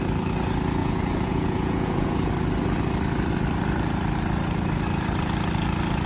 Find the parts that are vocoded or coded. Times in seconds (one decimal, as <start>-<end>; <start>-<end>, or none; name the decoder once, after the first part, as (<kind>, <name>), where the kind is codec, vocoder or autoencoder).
0.8-2.3 (vocoder, Vocos)